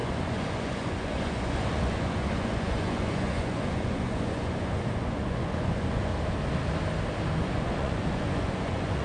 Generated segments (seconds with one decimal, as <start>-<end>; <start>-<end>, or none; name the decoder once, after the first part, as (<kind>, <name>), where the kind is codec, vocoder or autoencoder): 0.0-6.1 (vocoder, Vocos); 7.4-9.0

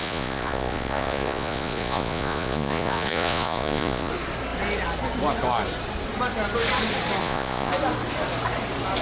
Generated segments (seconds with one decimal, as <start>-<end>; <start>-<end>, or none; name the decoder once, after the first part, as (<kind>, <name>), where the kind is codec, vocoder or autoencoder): 0.0-4.1 (vocoder, Vocos); 7.2-7.7

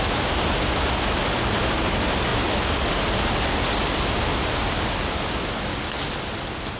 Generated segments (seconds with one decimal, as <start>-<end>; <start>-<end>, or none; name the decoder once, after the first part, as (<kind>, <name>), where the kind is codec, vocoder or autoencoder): none

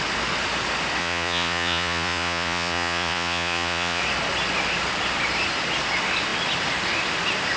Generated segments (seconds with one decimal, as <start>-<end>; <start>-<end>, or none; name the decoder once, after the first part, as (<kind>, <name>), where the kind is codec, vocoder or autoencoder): 1.0-4.0 (vocoder, Vocos)

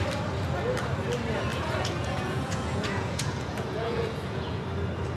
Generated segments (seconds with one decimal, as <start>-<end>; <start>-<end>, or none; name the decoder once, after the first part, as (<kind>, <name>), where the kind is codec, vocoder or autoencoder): 1.5-4.6 (vocoder, Vocos)

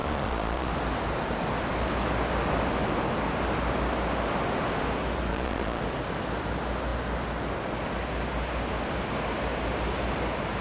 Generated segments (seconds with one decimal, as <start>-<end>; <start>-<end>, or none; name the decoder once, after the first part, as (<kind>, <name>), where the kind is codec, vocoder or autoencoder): 0.0-0.7 (vocoder, Vocos); 5.3-5.8

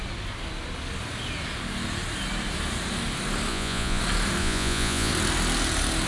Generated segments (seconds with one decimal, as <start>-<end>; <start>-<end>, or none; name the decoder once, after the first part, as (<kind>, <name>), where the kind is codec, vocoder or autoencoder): 3.5-4.0 (vocoder, Vocos); 4.4-5.1